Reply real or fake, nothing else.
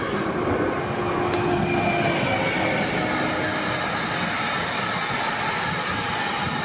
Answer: real